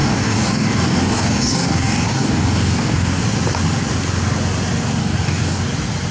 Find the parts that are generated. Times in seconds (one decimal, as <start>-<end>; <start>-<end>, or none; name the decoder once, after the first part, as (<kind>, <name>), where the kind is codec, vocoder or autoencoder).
0.0-3.2 (codec, DAC); 5.0-5.6

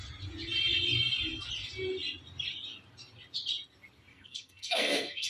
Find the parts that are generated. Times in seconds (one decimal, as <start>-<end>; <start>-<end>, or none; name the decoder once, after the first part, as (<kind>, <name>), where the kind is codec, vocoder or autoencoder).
4.1-5.3 (codec, SNAC)

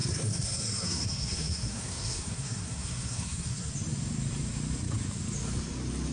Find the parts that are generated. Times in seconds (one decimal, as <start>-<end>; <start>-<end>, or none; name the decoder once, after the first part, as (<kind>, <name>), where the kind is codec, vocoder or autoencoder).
0.0-3.7 (codec, SNAC)

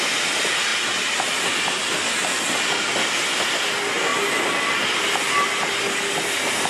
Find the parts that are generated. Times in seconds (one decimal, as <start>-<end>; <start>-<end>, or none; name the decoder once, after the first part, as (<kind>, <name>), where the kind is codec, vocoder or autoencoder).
none

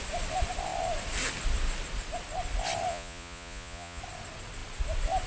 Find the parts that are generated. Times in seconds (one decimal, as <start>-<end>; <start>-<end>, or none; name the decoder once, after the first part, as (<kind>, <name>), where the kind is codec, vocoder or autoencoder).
2.9-4.0 (vocoder, Vocos)

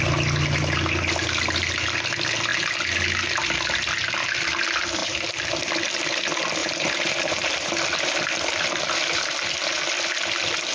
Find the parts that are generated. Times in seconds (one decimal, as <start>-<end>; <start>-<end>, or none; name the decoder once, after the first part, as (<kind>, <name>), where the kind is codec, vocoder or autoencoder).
5.0-5.5 (vocoder, BigVGAN v2); 6.6-7.7

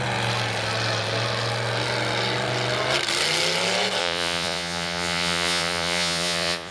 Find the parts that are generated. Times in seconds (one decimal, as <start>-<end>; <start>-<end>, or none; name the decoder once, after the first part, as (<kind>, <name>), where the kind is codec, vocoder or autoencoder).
4.0-6.7 (vocoder, Vocos)